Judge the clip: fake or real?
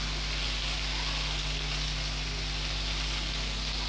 real